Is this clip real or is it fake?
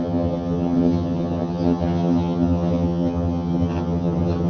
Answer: fake